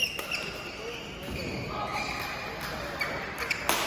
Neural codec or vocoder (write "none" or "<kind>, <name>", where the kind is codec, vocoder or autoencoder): none